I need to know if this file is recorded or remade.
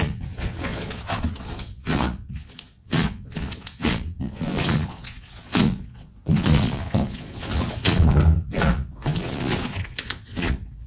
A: remade